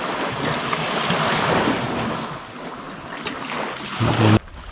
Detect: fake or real real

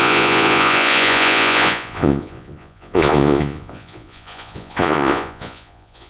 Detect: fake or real fake